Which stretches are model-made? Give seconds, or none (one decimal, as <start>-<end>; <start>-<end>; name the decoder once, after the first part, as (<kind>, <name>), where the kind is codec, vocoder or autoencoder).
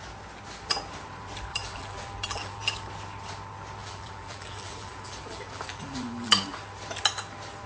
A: 1.5-2.7 (vocoder, BigVGAN v2); 3.8-6.3